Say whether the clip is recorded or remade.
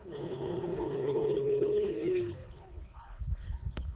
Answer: remade